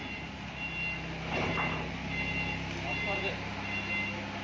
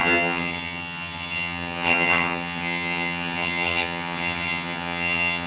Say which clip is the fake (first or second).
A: second